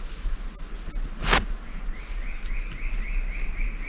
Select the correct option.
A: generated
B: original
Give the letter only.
B